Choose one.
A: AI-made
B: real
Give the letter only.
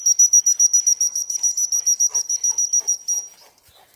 B